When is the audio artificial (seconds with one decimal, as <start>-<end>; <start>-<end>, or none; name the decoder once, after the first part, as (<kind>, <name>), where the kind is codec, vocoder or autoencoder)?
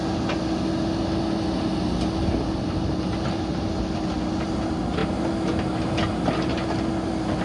none